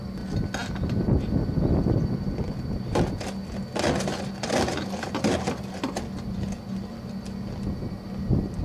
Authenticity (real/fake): real